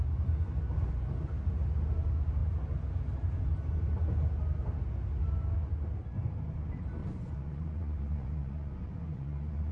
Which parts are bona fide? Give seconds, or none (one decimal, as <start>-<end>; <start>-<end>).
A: 0.0-7.0

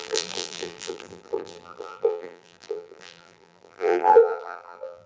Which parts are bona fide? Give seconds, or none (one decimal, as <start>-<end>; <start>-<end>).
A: none

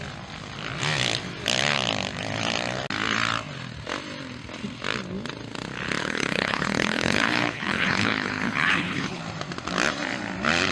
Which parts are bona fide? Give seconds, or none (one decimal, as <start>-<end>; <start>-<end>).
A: 0.0-6.0; 9.2-10.7

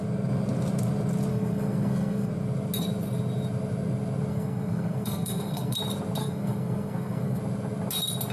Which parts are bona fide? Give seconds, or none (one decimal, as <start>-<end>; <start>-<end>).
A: 0.0-1.3; 2.3-4.3; 5.8-6.2; 7.4-8.3

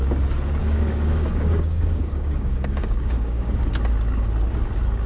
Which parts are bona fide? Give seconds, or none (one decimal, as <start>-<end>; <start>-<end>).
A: 0.0-0.6; 3.7-5.1

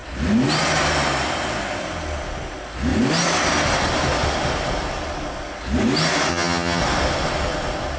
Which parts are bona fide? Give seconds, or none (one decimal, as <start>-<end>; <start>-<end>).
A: 0.0-6.3; 6.8-8.0

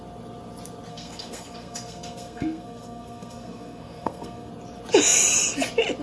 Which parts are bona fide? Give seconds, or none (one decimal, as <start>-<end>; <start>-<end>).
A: 0.0-0.9; 4.5-6.0